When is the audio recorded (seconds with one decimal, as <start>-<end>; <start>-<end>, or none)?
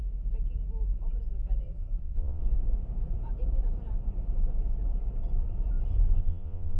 0.0-2.0; 2.4-6.2